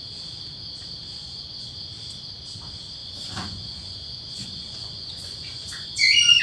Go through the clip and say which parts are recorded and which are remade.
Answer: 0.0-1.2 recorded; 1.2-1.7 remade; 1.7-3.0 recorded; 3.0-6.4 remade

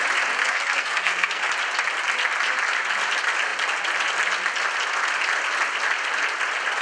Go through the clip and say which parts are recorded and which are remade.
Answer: 0.0-0.4 recorded; 0.4-1.5 remade; 1.5-6.8 recorded

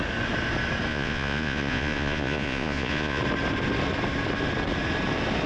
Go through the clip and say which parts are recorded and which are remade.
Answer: 0.0-0.9 recorded; 0.9-3.2 remade; 3.2-5.5 recorded

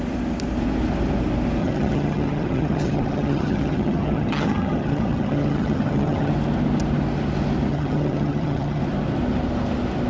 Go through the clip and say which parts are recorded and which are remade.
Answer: 0.0-1.6 recorded; 1.6-6.3 remade; 6.3-7.7 recorded; 7.7-8.8 remade; 8.8-10.1 recorded